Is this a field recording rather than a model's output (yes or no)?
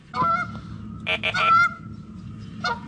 yes